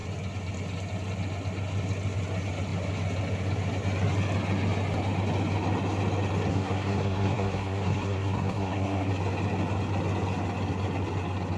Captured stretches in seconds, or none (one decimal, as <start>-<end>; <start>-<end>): 0.0-6.5; 9.1-11.6